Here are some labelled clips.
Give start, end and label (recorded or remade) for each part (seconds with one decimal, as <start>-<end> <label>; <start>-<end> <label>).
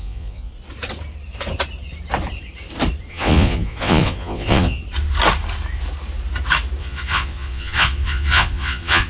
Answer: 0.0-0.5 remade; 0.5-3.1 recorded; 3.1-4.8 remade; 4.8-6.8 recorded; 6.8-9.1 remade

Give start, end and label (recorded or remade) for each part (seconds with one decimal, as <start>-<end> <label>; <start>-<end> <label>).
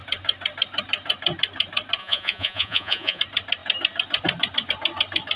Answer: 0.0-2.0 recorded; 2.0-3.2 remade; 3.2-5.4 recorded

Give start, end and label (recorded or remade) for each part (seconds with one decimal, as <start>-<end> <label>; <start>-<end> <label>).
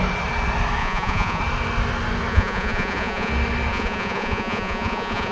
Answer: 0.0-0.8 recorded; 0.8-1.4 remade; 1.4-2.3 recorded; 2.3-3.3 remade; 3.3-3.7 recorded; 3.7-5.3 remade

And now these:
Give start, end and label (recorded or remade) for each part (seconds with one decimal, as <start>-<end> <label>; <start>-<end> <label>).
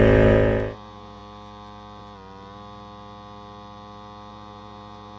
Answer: 0.0-1.2 remade; 1.2-4.3 recorded; 4.3-5.2 remade